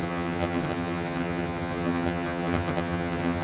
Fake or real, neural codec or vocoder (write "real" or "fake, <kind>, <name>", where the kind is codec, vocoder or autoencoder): fake, vocoder, HiFi-GAN